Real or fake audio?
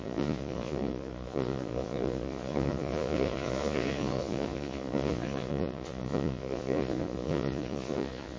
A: fake